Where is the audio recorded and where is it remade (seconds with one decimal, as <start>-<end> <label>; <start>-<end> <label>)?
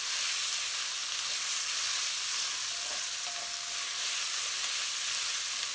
0.0-5.7 recorded